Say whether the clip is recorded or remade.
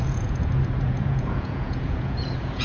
remade